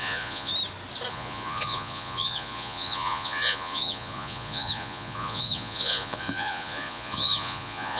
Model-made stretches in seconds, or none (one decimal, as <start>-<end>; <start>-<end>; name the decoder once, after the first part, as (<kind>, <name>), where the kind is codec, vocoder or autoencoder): 0.0-0.5 (vocoder, Vocos); 1.1-8.0